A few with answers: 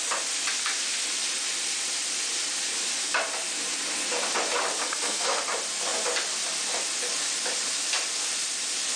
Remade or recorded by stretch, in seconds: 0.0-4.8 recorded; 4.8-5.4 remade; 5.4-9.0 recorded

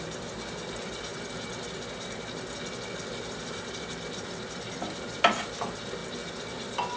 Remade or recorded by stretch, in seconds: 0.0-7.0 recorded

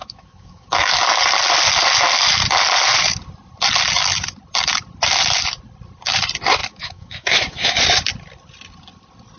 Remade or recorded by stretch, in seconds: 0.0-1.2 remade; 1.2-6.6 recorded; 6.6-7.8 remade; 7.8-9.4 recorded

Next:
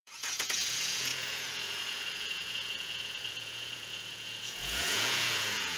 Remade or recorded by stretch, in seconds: 0.0-5.8 remade

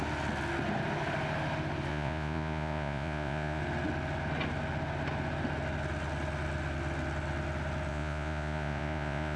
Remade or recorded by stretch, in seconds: 0.0-1.9 recorded; 1.9-3.6 remade; 3.6-7.9 recorded; 7.9-9.4 remade

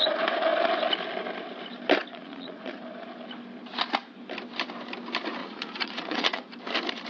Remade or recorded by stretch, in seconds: 0.0-2.1 recorded; 2.1-2.8 remade; 2.8-5.4 recorded; 5.4-6.5 remade; 6.5-7.1 recorded

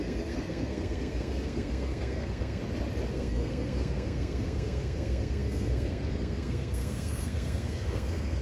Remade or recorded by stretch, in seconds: 0.0-2.6 remade; 2.6-3.1 recorded; 3.1-8.4 remade